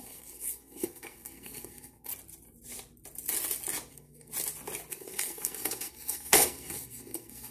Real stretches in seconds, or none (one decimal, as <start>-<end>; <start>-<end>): 2.1-3.9; 4.3-4.9